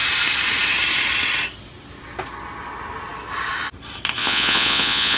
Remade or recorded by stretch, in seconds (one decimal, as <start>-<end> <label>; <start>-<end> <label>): 0.0-4.2 recorded; 4.2-5.2 remade